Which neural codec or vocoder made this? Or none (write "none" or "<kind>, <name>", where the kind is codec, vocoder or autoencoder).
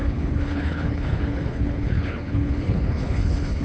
codec, HILCodec